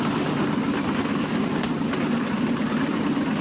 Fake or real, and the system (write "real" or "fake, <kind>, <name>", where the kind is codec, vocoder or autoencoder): real